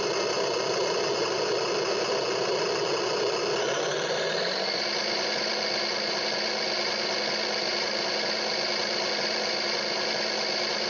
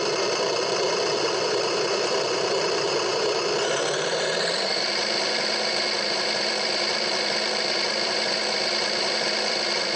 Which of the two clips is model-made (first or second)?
second